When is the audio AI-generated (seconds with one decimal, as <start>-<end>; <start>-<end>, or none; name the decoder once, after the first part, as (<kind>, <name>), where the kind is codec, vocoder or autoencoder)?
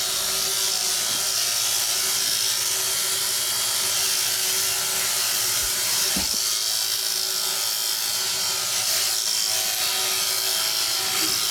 5.6-6.1 (vocoder, BigVGAN v2)